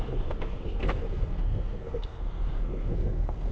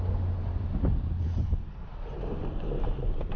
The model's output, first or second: first